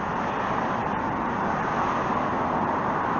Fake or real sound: real